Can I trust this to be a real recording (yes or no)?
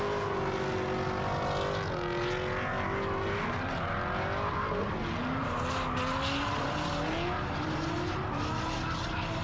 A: yes